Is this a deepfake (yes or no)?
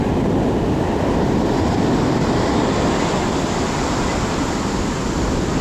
no